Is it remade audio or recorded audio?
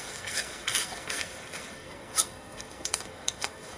remade